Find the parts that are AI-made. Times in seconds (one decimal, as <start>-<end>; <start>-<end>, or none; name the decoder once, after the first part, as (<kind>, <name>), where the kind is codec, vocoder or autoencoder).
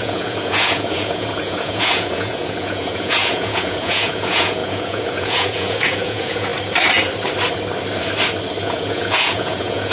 0.0-6.5 (vocoder, Vocos); 8.6-9.9